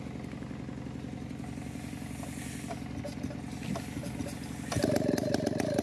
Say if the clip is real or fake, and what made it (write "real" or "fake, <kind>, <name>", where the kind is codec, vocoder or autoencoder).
real